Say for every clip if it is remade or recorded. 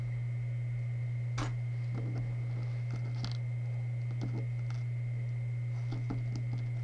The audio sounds recorded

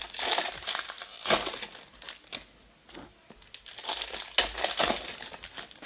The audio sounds recorded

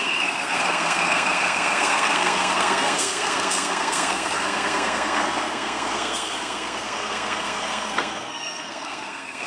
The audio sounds remade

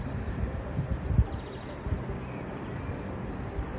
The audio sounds remade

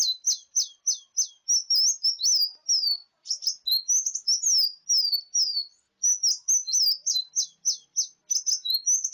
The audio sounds recorded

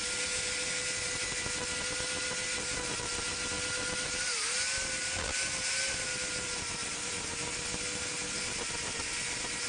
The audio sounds recorded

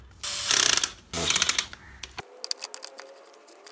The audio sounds recorded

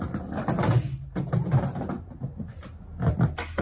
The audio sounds recorded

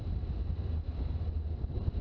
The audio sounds recorded